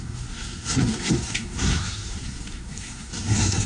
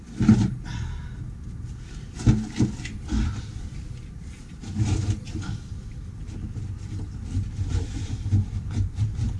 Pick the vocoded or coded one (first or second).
first